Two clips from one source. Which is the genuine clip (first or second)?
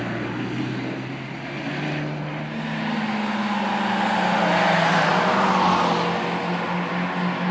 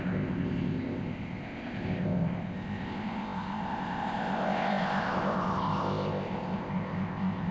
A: first